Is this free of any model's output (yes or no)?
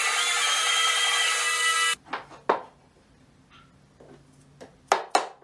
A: yes